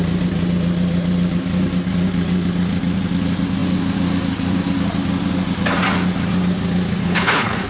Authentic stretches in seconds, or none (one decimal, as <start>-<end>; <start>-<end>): 0.0-7.0